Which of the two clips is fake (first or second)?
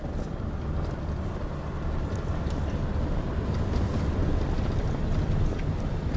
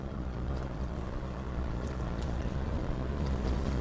second